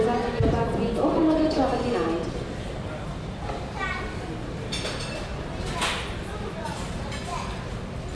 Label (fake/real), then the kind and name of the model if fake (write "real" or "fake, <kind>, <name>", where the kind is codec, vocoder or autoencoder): real